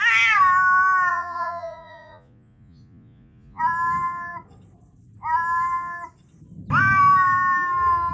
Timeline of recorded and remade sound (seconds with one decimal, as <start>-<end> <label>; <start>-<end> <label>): 0.0-1.1 recorded; 1.1-3.6 remade; 3.6-8.1 recorded

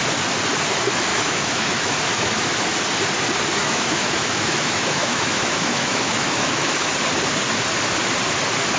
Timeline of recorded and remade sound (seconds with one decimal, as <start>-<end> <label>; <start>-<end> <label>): 0.0-1.1 recorded; 1.1-2.0 remade; 2.0-3.6 recorded; 3.6-6.9 remade; 6.9-8.8 recorded

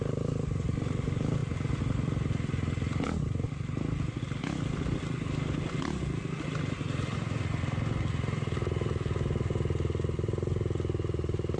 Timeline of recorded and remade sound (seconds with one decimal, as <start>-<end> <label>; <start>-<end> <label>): 0.0-11.6 recorded

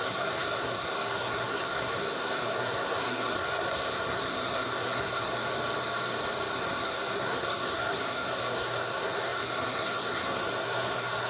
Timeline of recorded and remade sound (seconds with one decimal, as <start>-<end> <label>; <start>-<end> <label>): 0.0-5.3 remade; 5.3-6.5 recorded; 6.5-11.3 remade